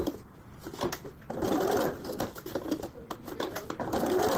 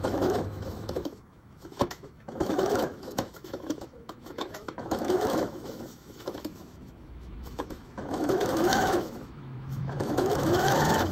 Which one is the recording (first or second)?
first